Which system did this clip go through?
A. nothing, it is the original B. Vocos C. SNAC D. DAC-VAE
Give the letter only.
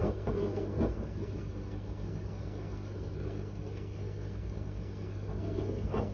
C